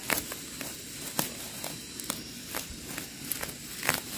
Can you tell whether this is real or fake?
real